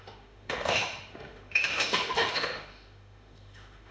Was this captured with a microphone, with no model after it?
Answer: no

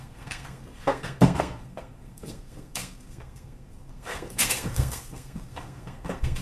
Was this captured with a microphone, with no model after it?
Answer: no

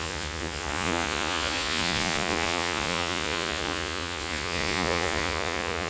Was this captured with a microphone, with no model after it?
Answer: no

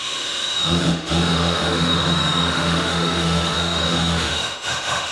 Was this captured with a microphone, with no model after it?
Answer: no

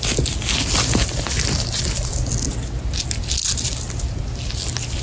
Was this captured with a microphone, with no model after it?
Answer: yes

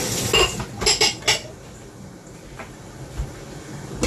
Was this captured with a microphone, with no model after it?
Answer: yes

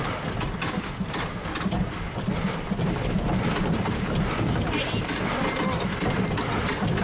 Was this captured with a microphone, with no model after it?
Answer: yes